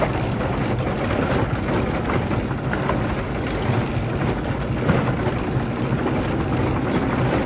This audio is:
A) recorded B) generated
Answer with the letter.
A